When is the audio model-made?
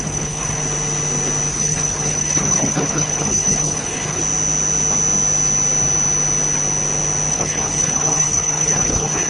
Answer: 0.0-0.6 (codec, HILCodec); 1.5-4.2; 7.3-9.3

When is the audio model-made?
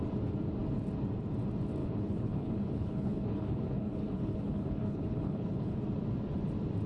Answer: 1.8-5.8 (codec, HILCodec)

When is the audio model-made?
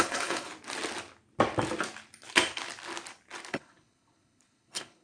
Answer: 0.0-0.5 (codec, HILCodec); 3.5-5.0